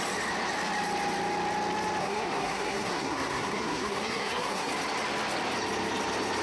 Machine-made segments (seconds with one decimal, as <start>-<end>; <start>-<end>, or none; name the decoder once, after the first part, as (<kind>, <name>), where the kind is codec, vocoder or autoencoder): 2.0-4.7 (codec, SNAC)